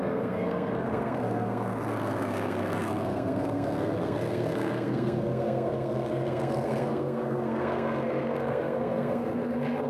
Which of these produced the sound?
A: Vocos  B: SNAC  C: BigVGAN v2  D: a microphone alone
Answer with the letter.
B